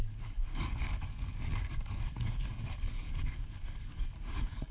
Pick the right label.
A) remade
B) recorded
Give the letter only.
A